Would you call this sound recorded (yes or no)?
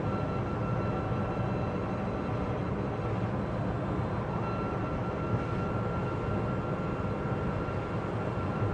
yes